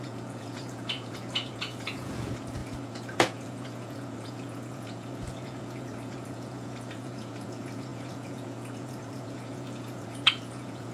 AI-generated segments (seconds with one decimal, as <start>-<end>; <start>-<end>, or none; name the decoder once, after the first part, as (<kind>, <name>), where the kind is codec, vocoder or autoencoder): 0.0-10.9 (vocoder, Vocos)